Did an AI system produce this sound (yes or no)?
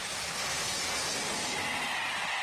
no